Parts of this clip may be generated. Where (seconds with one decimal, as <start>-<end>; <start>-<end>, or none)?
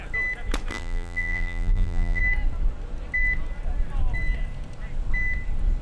0.7-2.2